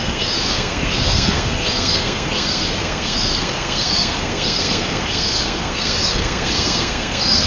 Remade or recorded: remade